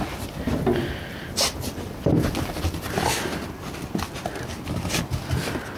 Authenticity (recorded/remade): recorded